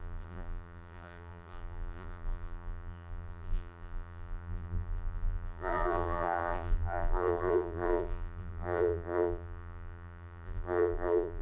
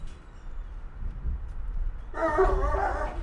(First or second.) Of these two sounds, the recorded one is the second